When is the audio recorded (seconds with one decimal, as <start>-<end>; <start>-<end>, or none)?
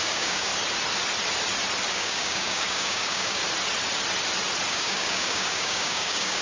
0.5-1.9; 3.4-4.7